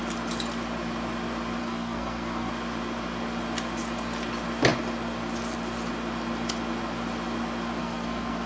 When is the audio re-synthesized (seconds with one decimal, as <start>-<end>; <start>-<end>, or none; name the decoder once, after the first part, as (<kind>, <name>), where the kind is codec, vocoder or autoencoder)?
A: 1.6-2.5 (codec, SNAC); 7.8-8.5